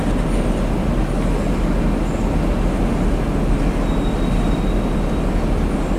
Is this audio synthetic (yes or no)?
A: no